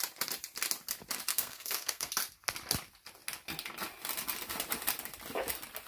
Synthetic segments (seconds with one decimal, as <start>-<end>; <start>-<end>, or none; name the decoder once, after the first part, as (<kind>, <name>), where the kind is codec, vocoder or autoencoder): 1.3-2.1 (codec, SNAC)